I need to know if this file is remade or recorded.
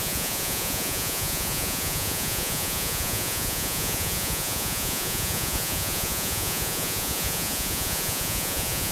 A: remade